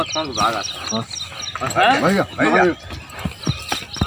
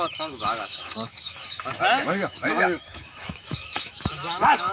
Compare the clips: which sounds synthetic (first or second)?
second